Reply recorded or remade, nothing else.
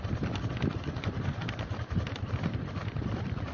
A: recorded